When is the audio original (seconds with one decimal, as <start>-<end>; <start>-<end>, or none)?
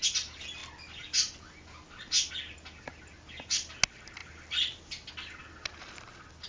0.0-6.5